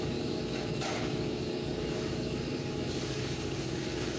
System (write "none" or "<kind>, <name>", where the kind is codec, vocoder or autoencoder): codec, DAC